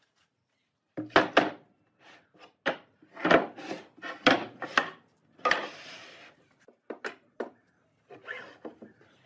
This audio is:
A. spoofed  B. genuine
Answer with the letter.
B